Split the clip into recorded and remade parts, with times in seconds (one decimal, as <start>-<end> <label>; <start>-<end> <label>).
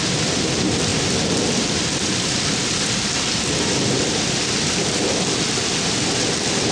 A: 0.0-6.7 recorded